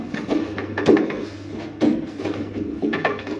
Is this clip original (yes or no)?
no